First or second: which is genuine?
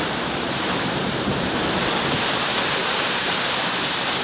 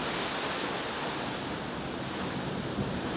second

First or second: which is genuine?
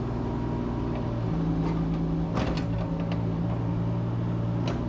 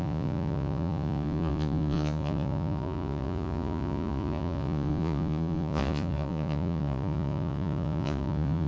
first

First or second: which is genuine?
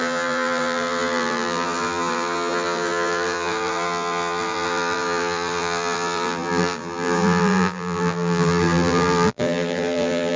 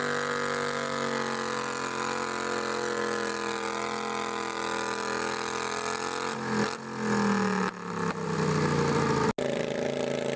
second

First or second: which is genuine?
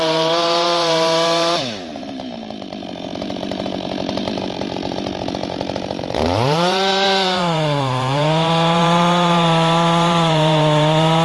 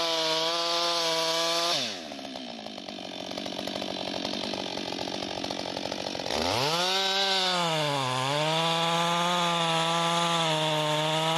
second